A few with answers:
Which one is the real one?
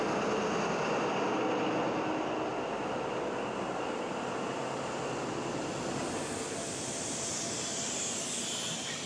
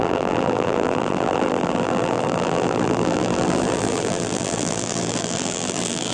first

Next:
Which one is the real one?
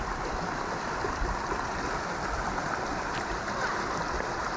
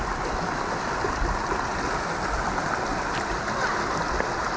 second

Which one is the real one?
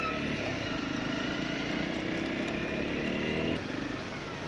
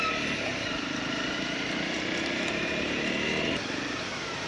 first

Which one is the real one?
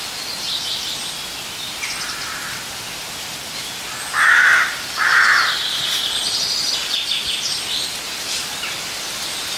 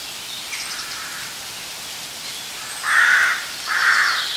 first